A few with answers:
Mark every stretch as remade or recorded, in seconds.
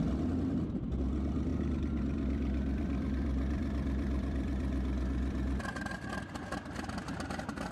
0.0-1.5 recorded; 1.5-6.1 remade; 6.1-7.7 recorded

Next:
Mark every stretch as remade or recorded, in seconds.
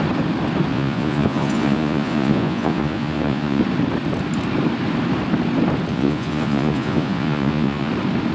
0.0-0.7 recorded; 0.7-3.6 remade; 3.6-5.9 recorded; 5.9-7.9 remade; 7.9-8.3 recorded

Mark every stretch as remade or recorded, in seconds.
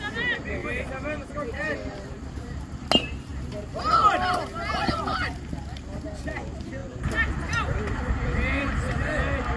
0.0-0.6 recorded; 0.6-2.6 remade; 2.6-9.6 recorded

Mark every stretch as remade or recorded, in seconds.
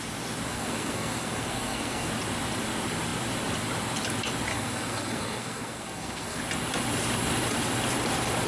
0.0-0.5 recorded; 0.5-2.1 remade; 2.1-4.5 recorded; 4.5-6.4 remade; 6.4-8.5 recorded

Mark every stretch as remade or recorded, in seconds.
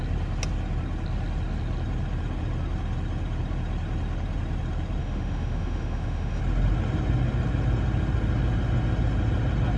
0.0-5.0 recorded; 5.0-6.4 remade; 6.4-9.8 recorded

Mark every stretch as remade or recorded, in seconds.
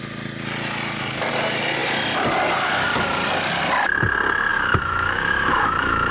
0.0-4.5 recorded; 4.5-6.1 remade